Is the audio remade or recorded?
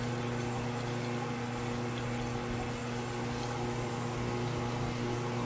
recorded